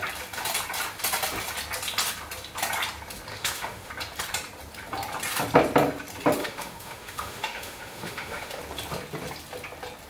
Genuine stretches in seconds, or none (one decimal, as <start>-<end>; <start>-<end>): 0.0-3.3; 3.9-6.4; 8.6-10.1